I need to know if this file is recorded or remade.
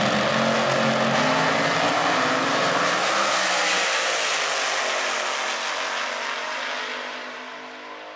recorded